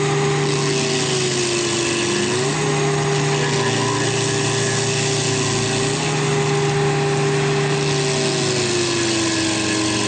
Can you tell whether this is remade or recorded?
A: recorded